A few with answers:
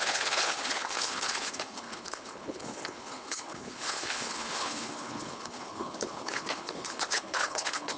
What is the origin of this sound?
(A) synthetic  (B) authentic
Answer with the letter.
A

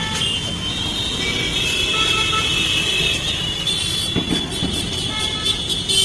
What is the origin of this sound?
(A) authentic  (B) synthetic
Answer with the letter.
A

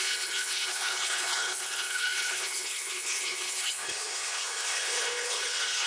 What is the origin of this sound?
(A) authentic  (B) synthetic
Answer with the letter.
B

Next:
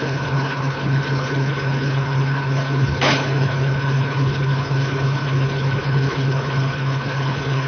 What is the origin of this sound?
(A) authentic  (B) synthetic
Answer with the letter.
B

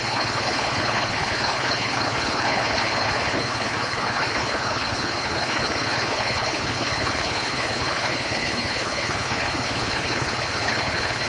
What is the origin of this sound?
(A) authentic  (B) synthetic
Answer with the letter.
B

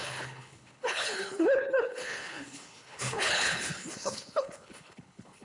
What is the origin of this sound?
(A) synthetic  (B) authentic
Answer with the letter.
A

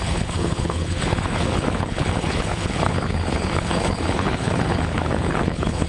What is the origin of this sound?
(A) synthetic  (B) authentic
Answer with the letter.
A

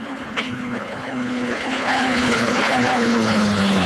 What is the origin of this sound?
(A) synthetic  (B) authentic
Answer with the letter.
A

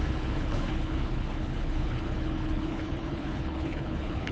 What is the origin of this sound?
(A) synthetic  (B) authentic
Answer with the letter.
A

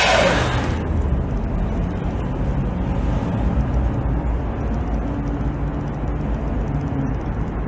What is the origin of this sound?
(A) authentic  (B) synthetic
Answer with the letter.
A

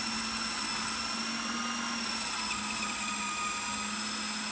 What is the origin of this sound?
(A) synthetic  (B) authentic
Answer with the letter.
B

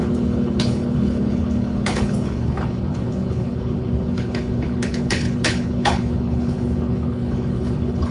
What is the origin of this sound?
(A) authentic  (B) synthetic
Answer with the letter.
B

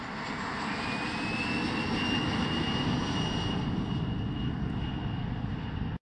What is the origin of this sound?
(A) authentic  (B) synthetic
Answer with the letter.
A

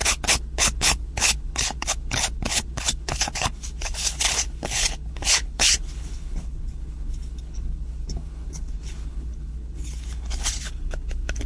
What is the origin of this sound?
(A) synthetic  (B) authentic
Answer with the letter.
A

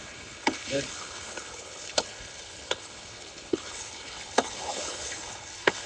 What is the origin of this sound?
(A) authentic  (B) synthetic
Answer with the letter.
B